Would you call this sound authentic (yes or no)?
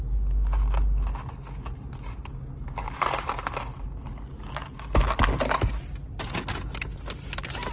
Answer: yes